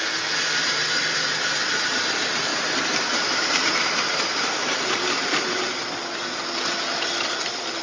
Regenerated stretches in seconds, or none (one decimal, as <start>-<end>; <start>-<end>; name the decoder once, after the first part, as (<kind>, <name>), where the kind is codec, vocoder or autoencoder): 2.5-5.8 (vocoder, BigVGAN v2)